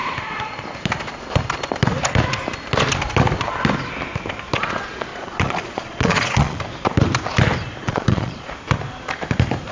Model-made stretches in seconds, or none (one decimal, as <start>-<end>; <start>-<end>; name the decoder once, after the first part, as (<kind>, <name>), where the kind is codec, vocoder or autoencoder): 5.1-6.6 (vocoder, Vocos); 7.8-8.5